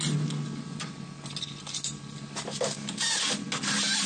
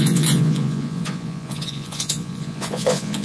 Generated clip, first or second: second